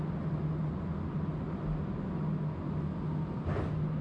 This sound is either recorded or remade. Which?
recorded